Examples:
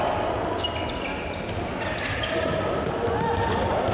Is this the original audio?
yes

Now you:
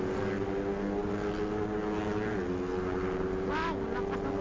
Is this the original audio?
yes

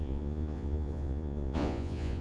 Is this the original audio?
no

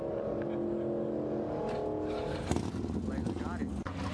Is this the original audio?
yes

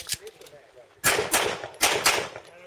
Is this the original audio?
yes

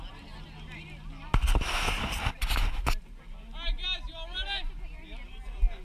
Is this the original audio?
yes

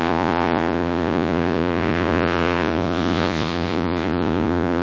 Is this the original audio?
no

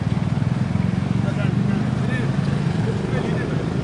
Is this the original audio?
yes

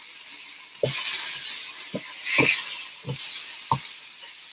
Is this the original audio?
yes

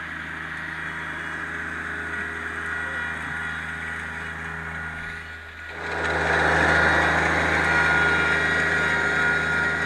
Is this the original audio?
yes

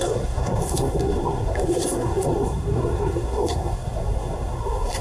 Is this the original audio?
no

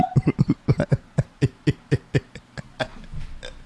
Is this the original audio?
yes